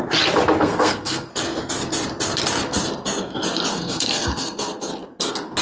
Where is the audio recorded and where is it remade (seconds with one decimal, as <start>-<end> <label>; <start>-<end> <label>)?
0.0-0.6 recorded; 0.6-1.3 remade; 1.3-3.7 recorded; 3.7-4.9 remade; 4.9-5.6 recorded